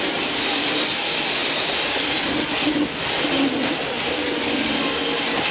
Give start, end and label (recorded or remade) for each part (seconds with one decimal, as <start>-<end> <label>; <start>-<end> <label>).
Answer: 0.0-5.5 recorded